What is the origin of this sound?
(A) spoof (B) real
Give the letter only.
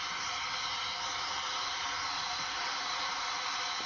B